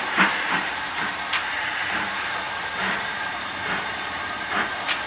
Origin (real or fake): fake